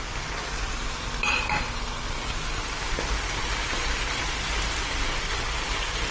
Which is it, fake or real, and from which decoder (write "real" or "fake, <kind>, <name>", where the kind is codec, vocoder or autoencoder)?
real